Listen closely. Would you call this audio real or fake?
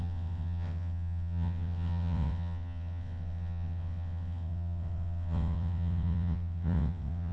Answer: fake